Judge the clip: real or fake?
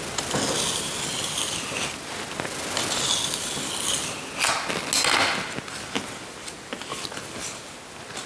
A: real